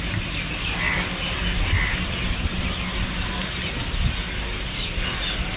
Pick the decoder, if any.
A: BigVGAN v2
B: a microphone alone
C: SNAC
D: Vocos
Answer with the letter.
B